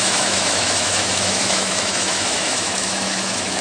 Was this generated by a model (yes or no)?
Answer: yes